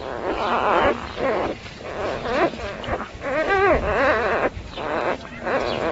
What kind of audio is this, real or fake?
real